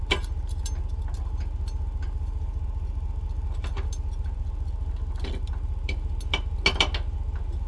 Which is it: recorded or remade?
recorded